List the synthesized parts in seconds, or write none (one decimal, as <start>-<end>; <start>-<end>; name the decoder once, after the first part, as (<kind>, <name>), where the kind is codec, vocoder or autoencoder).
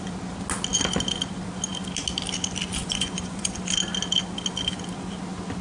2.8-3.6 (vocoder, Vocos)